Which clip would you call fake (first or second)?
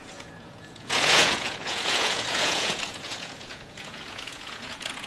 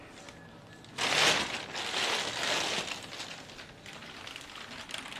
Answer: first